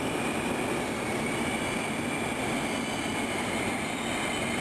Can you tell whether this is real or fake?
real